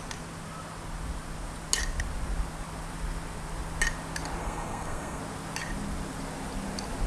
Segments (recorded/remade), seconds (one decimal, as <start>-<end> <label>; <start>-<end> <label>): 0.0-4.4 recorded; 4.4-5.2 remade; 5.2-7.1 recorded